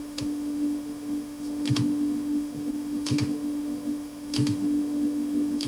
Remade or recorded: remade